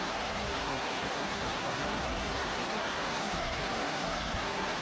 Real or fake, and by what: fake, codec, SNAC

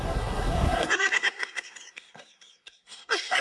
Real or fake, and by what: fake, codec, SNAC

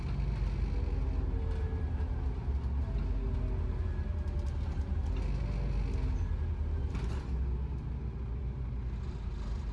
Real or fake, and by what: real